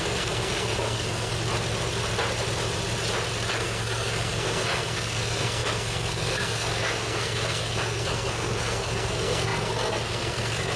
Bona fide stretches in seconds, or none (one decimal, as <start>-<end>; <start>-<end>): 1.3-3.5